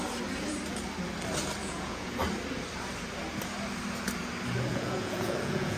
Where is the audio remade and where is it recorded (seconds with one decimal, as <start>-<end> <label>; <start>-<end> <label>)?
0.0-1.6 recorded; 1.6-2.1 remade; 2.1-4.7 recorded; 4.7-5.8 remade